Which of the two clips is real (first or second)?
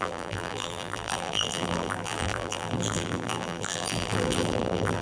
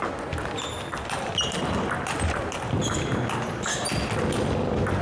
second